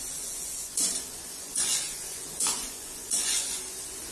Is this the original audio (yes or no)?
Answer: no